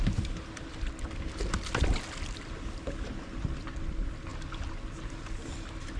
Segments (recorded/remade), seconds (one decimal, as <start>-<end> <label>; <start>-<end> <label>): 0.0-6.0 recorded